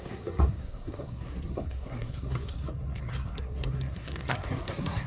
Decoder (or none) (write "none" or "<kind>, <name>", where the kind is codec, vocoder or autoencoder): codec, SNAC